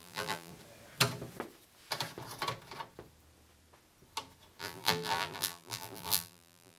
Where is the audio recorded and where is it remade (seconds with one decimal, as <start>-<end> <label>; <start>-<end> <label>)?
0.0-0.5 remade; 0.5-4.6 recorded; 4.6-6.8 remade